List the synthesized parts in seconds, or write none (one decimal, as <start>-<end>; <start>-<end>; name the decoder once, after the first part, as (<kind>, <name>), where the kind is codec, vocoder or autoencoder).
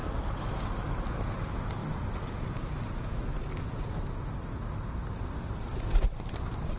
none